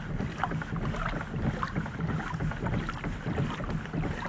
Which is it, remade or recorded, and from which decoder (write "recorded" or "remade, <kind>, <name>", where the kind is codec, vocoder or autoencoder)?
recorded